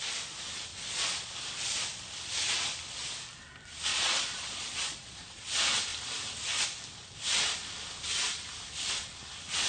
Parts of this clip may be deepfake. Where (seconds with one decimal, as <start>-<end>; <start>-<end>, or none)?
0.7-1.3; 3.9-5.4